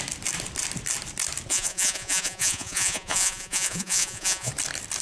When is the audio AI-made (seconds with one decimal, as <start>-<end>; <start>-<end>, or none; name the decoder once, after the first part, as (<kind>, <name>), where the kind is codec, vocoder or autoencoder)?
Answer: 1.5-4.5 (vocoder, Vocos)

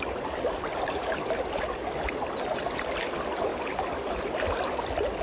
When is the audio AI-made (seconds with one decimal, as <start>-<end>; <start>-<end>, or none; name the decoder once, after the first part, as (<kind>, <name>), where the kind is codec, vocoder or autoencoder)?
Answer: none

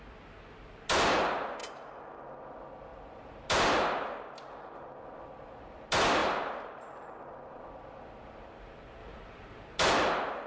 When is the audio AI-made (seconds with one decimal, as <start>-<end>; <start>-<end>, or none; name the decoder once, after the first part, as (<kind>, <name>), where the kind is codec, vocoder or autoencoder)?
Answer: 6.2-7.6 (vocoder, BigVGAN v2); 9.0-9.9

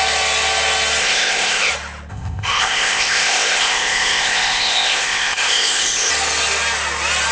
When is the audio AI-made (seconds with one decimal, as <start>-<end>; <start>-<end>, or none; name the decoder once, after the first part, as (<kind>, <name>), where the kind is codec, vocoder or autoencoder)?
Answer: 1.0-1.7 (codec, ZipCodec); 2.1-6.1

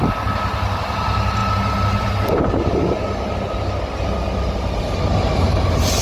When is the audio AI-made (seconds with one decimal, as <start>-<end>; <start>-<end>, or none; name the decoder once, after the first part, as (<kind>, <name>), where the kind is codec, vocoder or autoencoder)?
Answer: none

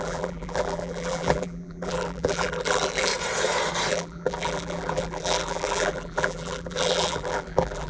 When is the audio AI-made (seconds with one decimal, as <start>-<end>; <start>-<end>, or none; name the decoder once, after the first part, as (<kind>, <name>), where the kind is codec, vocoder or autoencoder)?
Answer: 0.0-3.1 (vocoder, BigVGAN v2); 3.9-7.9